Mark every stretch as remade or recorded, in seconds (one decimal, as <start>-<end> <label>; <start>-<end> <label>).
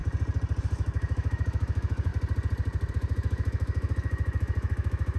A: 0.0-0.6 recorded; 0.6-2.1 remade; 2.1-2.9 recorded; 2.9-5.2 remade